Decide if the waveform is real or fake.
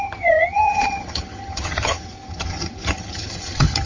fake